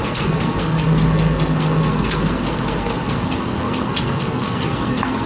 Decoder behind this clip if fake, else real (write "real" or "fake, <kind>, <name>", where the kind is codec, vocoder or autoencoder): fake, codec, SNAC